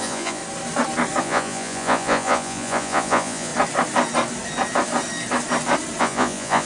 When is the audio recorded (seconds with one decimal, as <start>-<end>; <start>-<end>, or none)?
0.4-1.2; 3.5-6.0